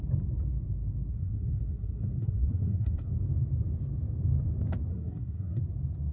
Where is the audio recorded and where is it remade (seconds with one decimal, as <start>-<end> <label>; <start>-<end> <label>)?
0.0-1.1 recorded; 1.1-3.1 remade; 3.1-4.9 recorded; 4.9-5.6 remade; 5.6-6.1 recorded